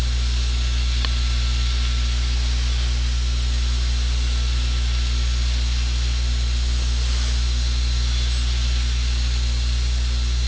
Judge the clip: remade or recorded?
recorded